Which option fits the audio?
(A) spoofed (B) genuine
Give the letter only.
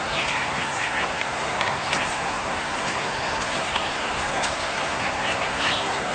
A